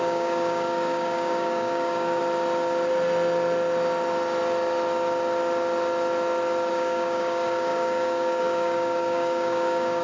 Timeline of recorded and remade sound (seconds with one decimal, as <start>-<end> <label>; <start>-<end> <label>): 0.0-2.2 remade; 2.2-6.7 recorded; 6.7-10.0 remade